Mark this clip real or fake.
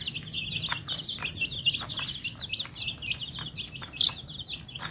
real